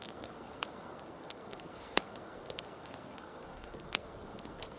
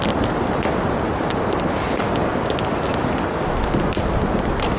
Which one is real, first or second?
second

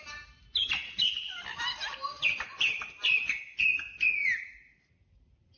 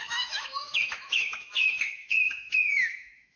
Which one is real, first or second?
first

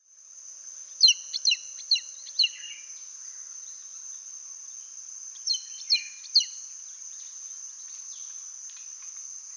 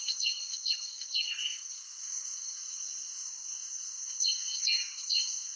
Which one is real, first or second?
first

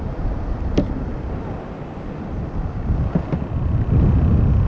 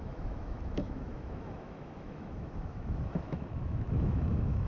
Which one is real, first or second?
first